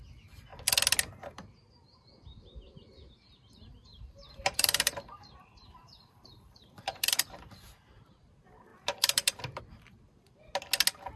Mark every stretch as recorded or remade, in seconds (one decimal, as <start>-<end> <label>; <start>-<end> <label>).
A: 0.0-3.9 recorded; 3.9-7.4 remade; 7.4-8.7 recorded; 8.7-9.6 remade; 9.6-11.2 recorded